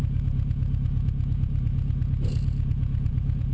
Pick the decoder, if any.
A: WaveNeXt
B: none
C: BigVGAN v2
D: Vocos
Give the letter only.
D